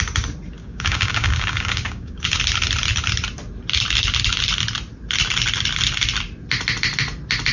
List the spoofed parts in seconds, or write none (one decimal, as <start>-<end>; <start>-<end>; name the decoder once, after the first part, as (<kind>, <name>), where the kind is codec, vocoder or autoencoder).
0.6-2.4 (codec, DAC)